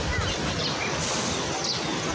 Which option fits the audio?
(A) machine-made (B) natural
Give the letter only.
B